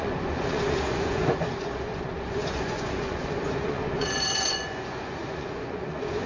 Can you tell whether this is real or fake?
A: fake